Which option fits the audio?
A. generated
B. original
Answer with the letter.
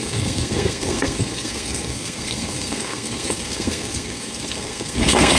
A